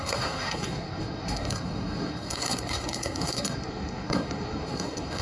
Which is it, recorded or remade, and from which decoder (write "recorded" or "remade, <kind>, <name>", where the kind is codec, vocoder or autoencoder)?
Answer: remade, codec, SNAC